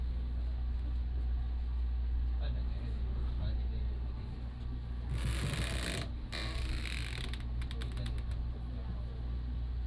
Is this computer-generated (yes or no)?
no